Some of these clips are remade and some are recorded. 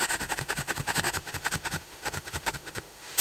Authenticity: remade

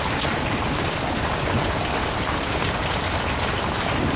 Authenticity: recorded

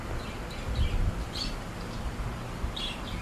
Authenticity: recorded